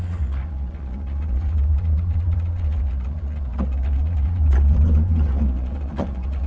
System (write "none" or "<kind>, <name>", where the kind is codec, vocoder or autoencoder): vocoder, Vocos